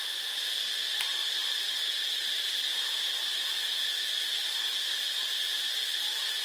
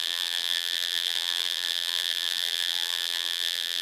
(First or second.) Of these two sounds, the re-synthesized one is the second